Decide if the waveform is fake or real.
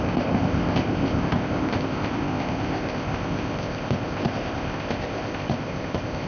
fake